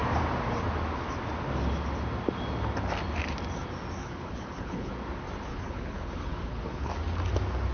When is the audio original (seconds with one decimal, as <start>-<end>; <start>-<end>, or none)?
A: 0.0-4.0; 4.9-5.5; 6.9-7.7